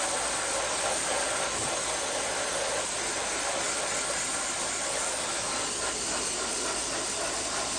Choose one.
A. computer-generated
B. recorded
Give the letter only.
B